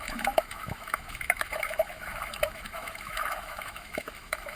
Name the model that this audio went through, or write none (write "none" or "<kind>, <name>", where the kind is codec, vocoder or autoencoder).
autoencoder, DAC-VAE